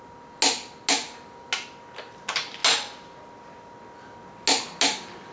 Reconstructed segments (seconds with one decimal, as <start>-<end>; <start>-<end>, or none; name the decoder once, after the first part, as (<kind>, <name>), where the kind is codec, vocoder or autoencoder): none